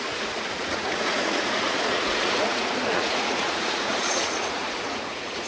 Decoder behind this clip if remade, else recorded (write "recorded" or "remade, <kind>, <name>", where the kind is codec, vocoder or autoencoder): remade, vocoder, Vocos